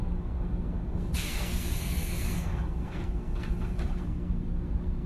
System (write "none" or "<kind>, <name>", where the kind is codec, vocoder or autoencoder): codec, SNAC